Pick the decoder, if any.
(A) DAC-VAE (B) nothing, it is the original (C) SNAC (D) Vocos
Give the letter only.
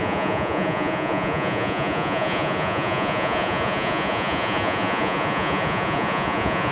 D